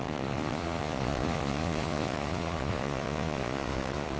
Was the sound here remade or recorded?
remade